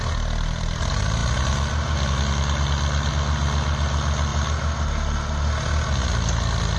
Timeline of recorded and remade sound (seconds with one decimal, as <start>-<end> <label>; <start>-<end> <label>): 0.0-6.8 recorded